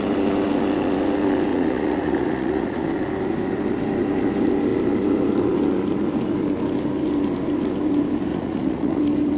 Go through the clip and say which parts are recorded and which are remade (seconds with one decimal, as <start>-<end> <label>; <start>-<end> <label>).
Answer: 0.0-1.5 recorded; 1.5-2.9 remade; 2.9-8.3 recorded; 8.3-9.0 remade; 9.0-9.4 recorded